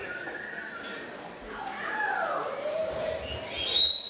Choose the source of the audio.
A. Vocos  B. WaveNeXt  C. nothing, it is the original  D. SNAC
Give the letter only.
C